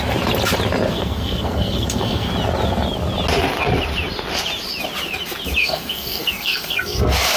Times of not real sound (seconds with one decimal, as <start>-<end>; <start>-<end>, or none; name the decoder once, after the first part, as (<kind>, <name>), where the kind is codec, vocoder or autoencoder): 0.9-2.3 (codec, SNAC); 5.6-7.0